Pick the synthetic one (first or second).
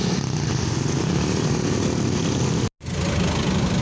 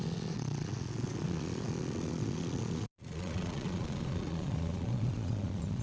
second